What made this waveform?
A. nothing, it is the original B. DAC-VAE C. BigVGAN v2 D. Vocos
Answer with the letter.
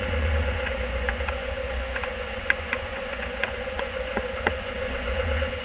D